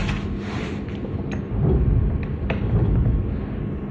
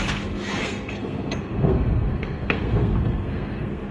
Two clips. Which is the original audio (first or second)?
first